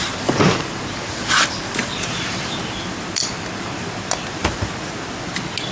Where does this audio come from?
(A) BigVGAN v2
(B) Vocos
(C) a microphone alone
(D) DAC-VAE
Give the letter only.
A